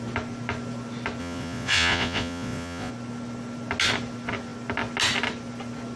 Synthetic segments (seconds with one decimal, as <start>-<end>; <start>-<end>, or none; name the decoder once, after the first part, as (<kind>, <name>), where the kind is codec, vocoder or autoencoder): 1.2-2.9 (vocoder, Vocos)